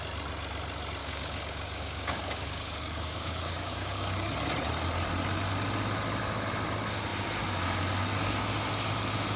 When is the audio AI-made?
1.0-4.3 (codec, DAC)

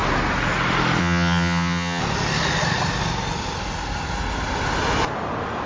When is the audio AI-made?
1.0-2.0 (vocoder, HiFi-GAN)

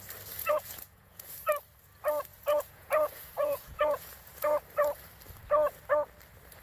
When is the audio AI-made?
0.4-1.3 (vocoder, Vocos); 2.3-4.6

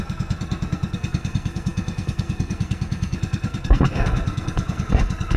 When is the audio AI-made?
0.0-5.4 (codec, SNAC)

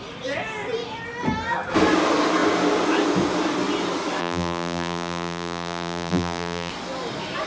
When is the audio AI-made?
4.2-6.7 (vocoder, BigVGAN v2)

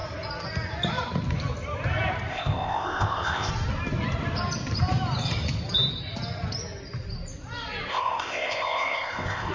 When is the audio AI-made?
2.3-3.5 (codec, ZipCodec); 7.9-9.5

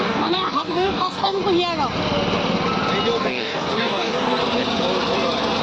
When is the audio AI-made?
0.0-1.4 (codec, DAC); 3.2-4.4